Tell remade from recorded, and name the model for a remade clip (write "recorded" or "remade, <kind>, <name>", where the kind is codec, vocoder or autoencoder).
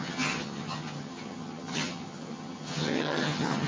remade, vocoder, HiFi-GAN